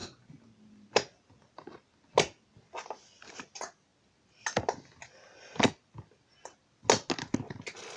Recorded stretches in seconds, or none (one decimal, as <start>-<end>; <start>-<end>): 0.0-8.0